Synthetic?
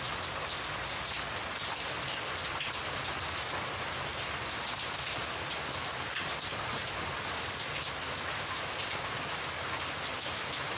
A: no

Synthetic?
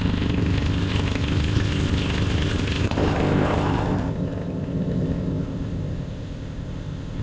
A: yes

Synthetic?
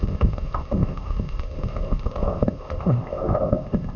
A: yes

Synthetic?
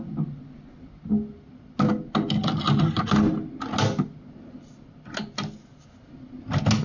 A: no